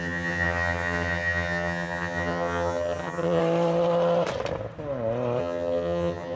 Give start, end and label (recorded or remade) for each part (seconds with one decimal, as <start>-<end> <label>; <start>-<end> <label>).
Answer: 0.0-3.4 remade; 3.4-5.4 recorded; 5.4-6.4 remade